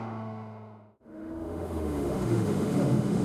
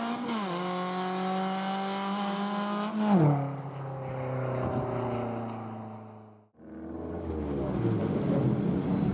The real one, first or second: second